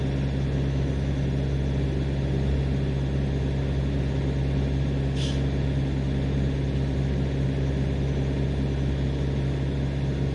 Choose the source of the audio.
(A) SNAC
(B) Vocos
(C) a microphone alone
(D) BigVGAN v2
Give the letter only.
C